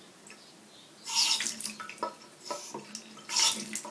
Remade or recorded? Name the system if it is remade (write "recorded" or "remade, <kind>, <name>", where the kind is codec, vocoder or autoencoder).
recorded